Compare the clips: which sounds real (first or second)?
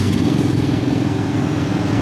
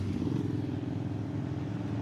second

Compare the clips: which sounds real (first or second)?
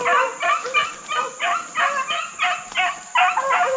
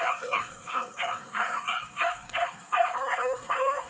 first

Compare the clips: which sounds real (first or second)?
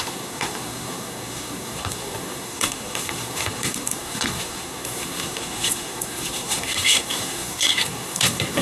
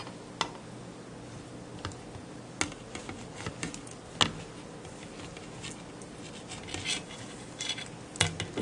second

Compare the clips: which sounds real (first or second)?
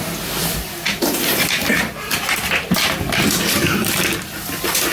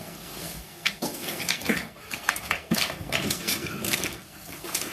first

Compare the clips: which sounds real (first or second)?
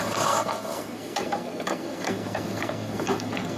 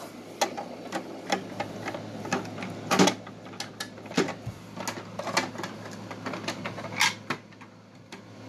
second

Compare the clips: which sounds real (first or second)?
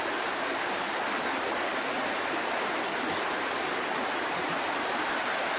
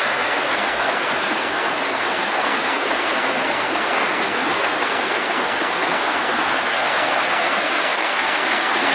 first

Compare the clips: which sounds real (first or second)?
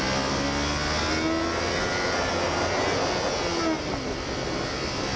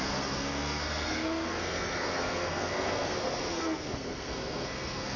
first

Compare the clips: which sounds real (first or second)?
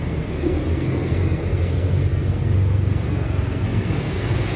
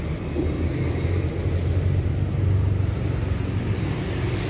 second